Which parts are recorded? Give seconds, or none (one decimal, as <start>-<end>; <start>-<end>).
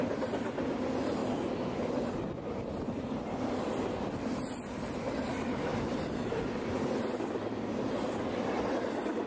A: 0.0-9.3